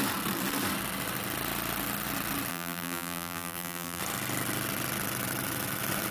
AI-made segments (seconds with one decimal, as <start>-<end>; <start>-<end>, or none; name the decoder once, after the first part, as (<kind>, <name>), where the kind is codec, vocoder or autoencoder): 2.5-4.0 (vocoder, BigVGAN v2)

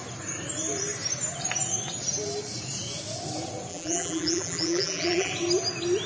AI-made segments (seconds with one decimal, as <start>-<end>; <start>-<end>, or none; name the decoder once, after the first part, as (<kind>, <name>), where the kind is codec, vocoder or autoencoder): 3.7-5.3 (vocoder, BigVGAN v2)